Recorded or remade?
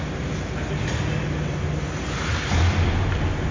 recorded